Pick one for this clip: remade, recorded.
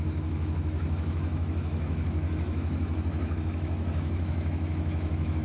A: remade